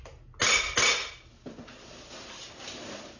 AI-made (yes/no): no